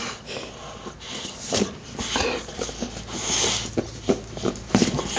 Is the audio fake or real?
real